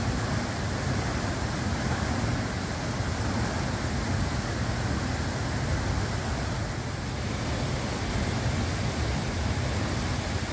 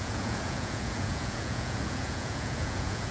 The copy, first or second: second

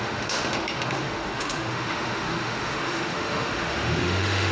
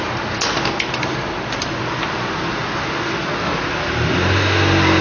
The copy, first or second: first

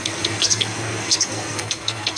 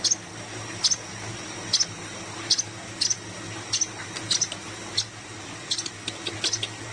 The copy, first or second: first